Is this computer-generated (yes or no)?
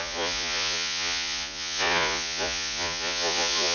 yes